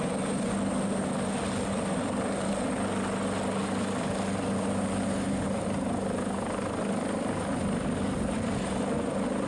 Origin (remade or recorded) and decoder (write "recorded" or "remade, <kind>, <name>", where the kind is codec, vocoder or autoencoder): recorded